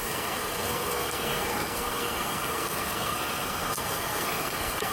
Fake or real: fake